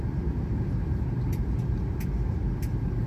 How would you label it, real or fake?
real